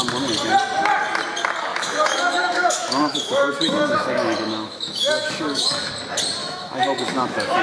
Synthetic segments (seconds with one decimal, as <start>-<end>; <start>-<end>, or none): 1.7-5.9; 6.4-7.6

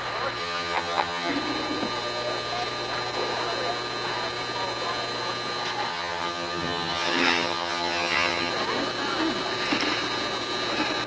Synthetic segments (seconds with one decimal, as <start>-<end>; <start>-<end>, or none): 0.4-1.3; 5.9-8.5

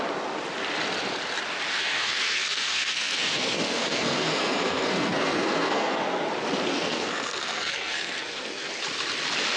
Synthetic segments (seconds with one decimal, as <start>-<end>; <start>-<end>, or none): 1.7-6.3; 6.7-8.7

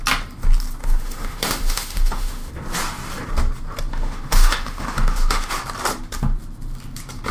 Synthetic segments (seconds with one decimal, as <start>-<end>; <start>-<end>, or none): 0.8-2.5; 3.9-5.5

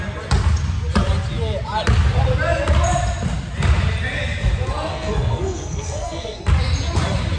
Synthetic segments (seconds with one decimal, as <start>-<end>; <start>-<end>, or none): 4.9-6.4

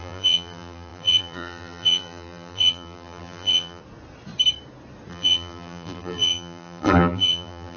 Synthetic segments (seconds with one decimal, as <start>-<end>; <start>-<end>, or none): 0.0-3.8; 5.1-7.8

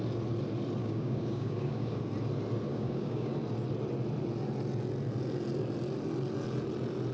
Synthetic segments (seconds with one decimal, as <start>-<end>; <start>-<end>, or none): 0.8-2.0; 2.7-3.3